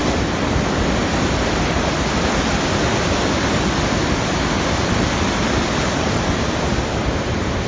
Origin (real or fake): real